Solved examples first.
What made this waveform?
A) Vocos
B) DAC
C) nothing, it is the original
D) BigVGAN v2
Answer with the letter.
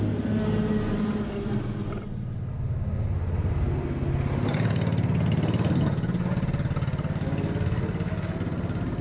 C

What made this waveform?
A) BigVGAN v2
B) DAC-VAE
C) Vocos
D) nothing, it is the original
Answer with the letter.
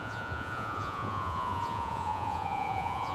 C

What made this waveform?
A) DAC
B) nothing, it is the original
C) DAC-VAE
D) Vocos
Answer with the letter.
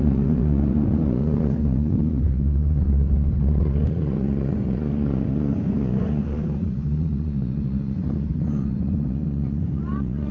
D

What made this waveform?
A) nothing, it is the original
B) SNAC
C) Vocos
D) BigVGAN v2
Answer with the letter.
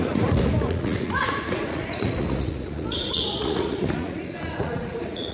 C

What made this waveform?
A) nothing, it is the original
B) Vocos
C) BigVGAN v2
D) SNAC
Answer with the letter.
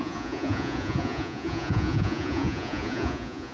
B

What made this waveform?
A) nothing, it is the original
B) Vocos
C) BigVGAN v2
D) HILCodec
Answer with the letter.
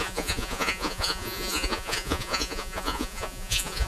B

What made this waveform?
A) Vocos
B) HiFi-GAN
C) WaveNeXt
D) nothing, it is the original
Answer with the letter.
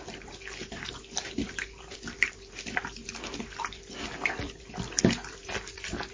D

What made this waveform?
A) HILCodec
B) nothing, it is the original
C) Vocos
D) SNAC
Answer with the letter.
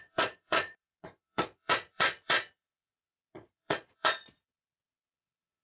C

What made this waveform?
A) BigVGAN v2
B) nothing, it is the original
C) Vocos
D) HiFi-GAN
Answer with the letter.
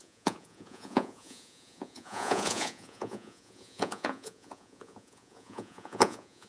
C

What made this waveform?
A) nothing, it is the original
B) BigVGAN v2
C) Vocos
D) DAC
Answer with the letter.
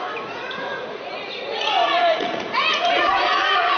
C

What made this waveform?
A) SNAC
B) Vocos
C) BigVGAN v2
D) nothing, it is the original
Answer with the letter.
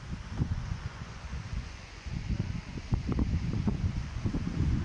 B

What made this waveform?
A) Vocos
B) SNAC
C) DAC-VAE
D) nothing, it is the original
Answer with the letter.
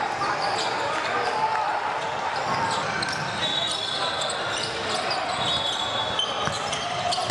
D